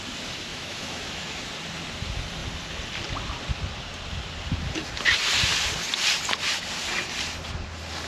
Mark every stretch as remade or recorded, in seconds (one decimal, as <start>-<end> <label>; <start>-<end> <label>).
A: 0.0-0.5 recorded; 0.5-1.5 remade; 1.5-8.1 recorded

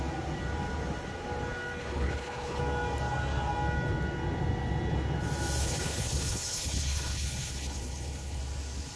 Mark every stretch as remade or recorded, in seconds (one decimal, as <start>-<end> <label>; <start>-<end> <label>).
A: 0.0-1.8 recorded; 1.8-2.6 remade; 2.6-5.6 recorded; 5.6-8.4 remade; 8.4-9.0 recorded

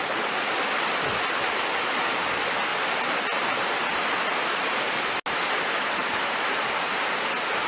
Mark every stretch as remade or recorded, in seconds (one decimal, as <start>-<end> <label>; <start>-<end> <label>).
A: 0.0-7.7 recorded

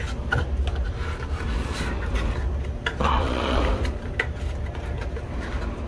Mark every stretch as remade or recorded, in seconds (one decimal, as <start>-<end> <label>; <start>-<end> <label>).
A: 0.0-3.0 recorded; 3.0-3.6 remade; 3.6-5.9 recorded

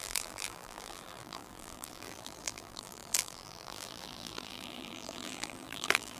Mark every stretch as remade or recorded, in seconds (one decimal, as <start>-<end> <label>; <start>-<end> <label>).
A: 0.0-6.2 remade